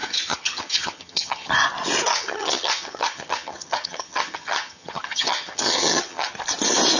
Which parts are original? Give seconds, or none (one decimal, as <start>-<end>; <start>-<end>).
1.5-2.1; 6.3-7.0